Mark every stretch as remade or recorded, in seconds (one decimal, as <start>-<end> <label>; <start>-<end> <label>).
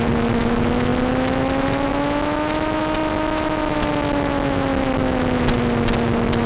0.0-6.5 recorded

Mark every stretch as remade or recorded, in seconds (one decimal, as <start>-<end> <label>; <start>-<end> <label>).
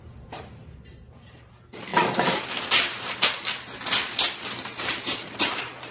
0.0-5.9 remade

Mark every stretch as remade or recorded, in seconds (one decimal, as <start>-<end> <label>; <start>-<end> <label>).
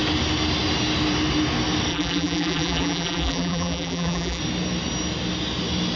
0.0-1.9 recorded; 1.9-4.4 remade; 4.4-6.0 recorded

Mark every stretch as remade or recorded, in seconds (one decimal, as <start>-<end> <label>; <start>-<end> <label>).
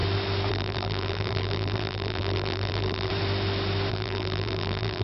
0.0-0.5 recorded; 0.5-3.1 remade; 3.1-3.9 recorded; 3.9-5.0 remade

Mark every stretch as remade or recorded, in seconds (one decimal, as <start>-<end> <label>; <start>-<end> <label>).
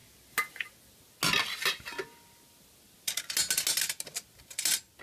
0.0-5.0 recorded